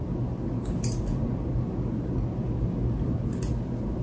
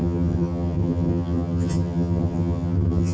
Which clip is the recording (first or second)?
first